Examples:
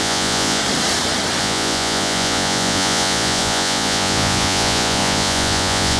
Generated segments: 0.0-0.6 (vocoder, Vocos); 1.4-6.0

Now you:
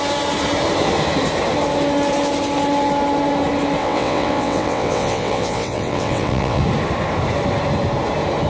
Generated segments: 3.8-6.6 (vocoder, WaveNeXt)

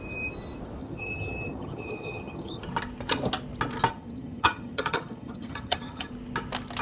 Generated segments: 0.8-2.6 (vocoder, HiFi-GAN); 3.9-6.1

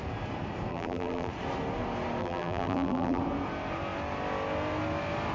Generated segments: 0.7-1.3 (vocoder, BigVGAN v2); 2.2-3.2

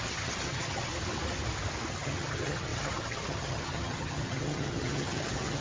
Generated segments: 0.0-0.9 (vocoder, HiFi-GAN); 1.9-5.6

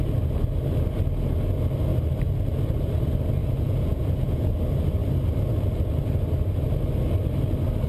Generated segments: 3.4-4.5 (vocoder, Vocos)

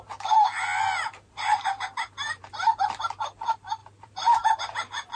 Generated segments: 1.5-2.5 (vocoder, BigVGAN v2); 3.8-5.1